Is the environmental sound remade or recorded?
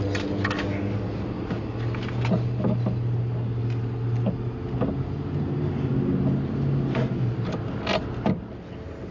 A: recorded